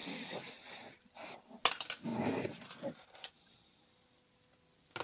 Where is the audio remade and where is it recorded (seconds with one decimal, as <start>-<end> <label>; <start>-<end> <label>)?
0.0-5.0 recorded